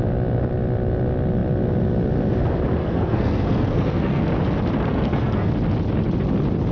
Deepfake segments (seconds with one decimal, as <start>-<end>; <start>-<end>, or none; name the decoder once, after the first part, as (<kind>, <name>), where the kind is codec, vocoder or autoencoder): 2.8-4.2 (codec, SNAC); 4.9-5.5